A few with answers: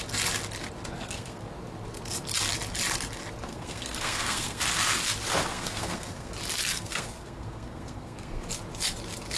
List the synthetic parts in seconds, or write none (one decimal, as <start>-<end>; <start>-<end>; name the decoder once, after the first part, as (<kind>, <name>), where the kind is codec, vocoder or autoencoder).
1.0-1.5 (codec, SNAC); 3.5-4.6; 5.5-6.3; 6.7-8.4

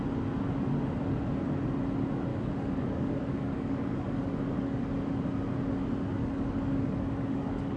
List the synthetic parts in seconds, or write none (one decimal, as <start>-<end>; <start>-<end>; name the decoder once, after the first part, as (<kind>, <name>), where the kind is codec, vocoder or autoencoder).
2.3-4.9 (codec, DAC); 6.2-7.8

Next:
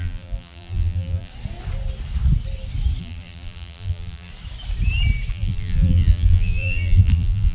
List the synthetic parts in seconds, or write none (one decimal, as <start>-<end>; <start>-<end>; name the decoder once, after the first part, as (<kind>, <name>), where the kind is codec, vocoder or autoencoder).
0.0-1.3 (vocoder, BigVGAN v2); 3.0-4.3; 5.3-7.5

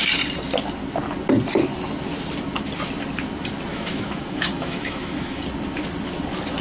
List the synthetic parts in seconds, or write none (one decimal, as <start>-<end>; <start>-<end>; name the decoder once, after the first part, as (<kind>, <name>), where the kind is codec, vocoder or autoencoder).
3.7-5.4 (autoencoder, DAC-VAE)

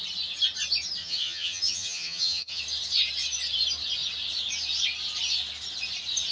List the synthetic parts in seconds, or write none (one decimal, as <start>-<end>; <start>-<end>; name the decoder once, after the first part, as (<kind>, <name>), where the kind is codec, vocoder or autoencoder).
1.0-2.6 (vocoder, HiFi-GAN)

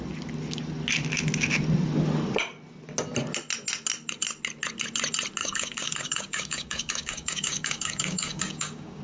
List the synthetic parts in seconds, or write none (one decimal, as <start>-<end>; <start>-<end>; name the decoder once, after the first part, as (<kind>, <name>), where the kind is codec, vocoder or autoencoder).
5.4-9.0 (codec, DAC)

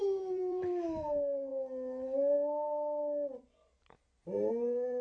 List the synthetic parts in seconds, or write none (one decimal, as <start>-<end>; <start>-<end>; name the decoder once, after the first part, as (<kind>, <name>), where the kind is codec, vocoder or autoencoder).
0.0-1.5 (vocoder, BigVGAN v2); 4.5-5.0

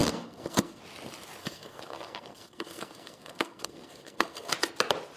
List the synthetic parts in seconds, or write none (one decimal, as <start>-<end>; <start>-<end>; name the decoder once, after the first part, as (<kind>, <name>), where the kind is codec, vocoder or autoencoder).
0.0-0.8 (codec, SNAC); 1.4-4.5